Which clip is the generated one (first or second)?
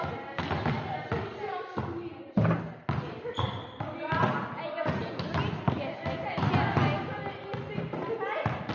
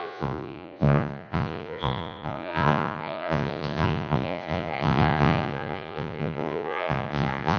second